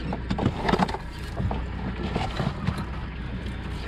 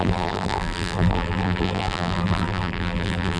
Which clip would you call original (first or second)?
first